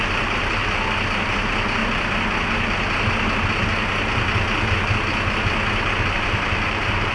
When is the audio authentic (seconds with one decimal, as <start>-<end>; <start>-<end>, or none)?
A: 0.6-1.2; 1.8-6.1